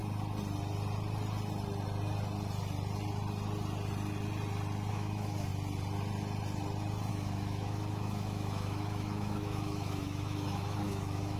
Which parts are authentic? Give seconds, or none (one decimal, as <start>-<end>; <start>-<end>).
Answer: 0.0-4.9; 5.5-7.1